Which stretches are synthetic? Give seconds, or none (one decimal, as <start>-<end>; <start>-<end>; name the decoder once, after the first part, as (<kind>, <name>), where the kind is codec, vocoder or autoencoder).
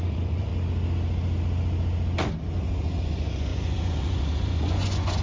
0.0-0.5 (vocoder, Vocos); 2.6-5.2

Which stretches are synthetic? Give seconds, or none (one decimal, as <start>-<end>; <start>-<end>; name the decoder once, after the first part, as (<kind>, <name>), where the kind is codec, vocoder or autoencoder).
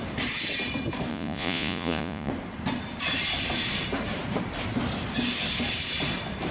1.1-2.3 (vocoder, Vocos)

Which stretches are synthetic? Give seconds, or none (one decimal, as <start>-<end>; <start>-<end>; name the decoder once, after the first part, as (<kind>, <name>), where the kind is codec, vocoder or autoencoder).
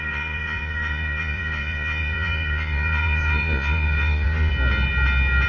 0.0-4.5 (vocoder, Vocos)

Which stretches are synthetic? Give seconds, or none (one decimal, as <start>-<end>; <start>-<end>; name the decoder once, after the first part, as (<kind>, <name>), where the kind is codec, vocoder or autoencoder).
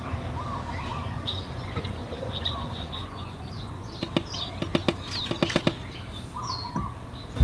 0.9-3.9 (vocoder, Vocos)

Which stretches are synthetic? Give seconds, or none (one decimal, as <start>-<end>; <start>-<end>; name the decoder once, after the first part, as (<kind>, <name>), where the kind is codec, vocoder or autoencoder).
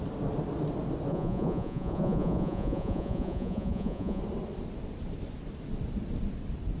1.1-4.2 (vocoder, Vocos)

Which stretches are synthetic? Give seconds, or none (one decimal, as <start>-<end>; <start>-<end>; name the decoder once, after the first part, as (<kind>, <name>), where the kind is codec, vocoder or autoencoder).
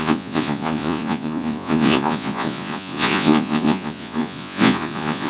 0.0-5.3 (vocoder, Vocos)